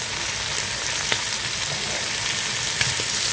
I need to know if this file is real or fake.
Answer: real